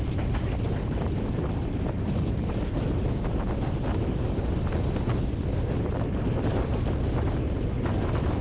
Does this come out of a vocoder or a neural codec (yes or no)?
no